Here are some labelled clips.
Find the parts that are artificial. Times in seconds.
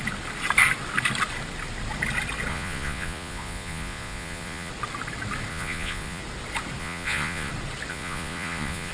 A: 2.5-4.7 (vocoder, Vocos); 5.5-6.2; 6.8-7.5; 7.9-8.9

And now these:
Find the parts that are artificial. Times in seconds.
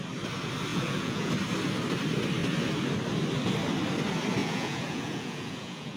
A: 0.7-1.3 (vocoder, Vocos); 4.4-6.0